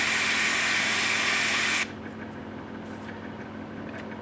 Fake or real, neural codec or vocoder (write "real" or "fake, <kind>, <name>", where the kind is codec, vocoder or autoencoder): real